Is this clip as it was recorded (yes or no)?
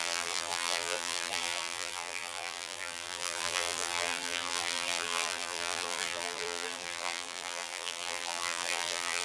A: no